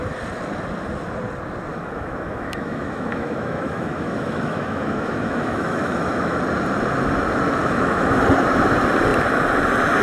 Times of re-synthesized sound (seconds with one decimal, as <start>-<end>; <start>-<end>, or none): 1.7-6.4; 7.6-8.2